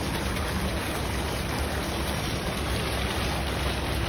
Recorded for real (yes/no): yes